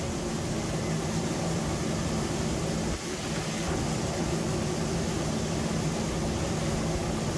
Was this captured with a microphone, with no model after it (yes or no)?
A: yes